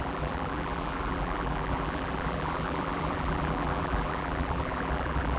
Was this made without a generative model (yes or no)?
no